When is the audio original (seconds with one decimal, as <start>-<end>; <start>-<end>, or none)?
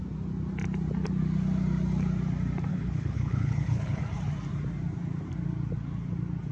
0.0-2.7; 4.0-6.5